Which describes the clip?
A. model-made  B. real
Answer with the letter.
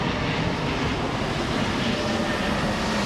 B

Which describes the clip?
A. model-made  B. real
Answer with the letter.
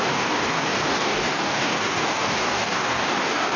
A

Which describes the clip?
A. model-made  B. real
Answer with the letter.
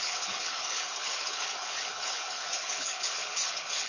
A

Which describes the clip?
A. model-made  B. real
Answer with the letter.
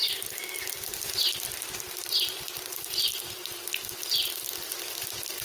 B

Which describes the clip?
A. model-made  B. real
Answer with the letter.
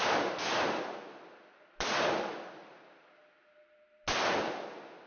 B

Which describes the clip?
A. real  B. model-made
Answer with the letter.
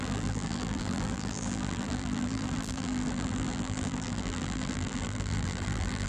B